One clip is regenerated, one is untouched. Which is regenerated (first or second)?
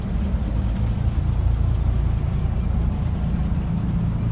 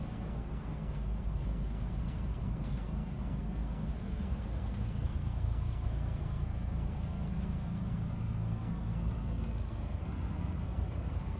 second